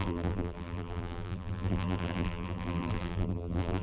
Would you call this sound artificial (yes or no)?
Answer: yes